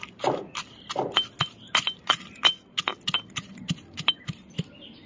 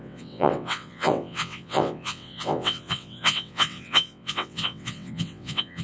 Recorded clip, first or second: first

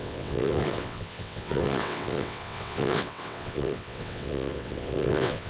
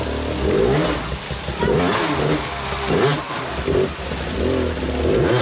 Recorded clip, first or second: second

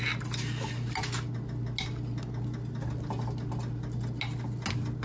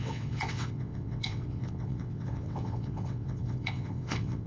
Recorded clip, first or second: first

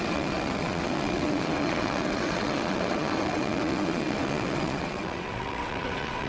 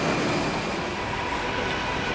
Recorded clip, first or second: second